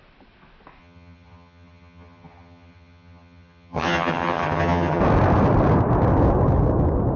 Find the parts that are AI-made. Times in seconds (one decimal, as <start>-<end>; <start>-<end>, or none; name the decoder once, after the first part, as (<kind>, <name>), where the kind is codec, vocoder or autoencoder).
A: 0.8-5.0 (vocoder, HiFi-GAN)